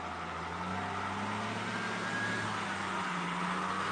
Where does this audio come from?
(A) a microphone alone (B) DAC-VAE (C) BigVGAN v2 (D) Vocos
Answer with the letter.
A